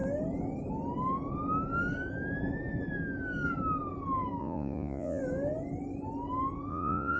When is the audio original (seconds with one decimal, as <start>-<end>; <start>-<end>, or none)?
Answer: 0.0-4.4; 5.2-6.7